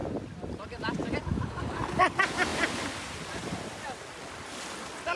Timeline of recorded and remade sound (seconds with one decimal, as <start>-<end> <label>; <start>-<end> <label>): 0.0-2.0 remade; 2.0-2.5 recorded; 2.5-5.2 remade